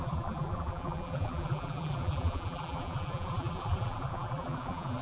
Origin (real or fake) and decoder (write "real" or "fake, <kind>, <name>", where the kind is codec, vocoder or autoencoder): fake, vocoder, BigVGAN v2